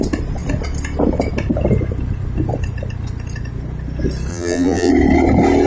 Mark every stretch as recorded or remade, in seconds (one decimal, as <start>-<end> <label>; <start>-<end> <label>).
0.0-4.3 recorded; 4.3-4.9 remade; 4.9-5.7 recorded